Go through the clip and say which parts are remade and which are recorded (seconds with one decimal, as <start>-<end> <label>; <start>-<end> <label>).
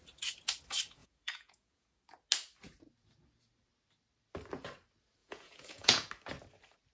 0.0-1.0 recorded; 1.0-2.0 remade; 2.0-5.2 recorded; 5.2-6.1 remade; 6.1-6.9 recorded